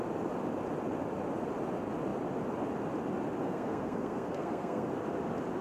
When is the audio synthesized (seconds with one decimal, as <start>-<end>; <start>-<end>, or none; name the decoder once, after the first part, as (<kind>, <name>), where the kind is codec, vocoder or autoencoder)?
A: 3.4-4.9 (codec, SNAC)